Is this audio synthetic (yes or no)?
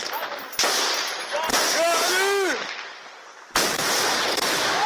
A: no